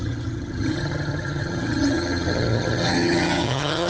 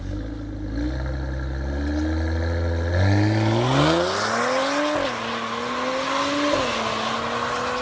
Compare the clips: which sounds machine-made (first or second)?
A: first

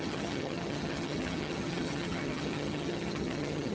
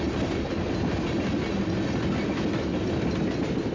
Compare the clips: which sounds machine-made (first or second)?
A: first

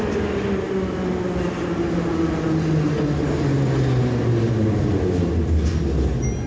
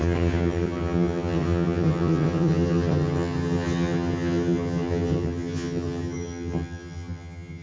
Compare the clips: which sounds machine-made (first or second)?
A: second